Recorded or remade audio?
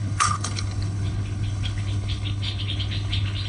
remade